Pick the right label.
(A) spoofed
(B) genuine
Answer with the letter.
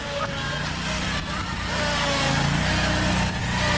B